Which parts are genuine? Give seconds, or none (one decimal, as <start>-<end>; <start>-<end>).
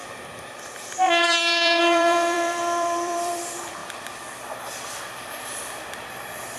3.8-6.1